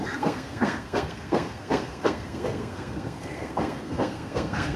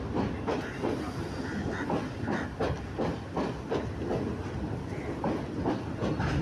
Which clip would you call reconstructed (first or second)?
first